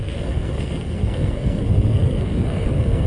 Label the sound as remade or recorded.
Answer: remade